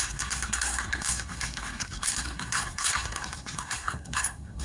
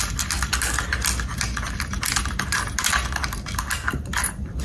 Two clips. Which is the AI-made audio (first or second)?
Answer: first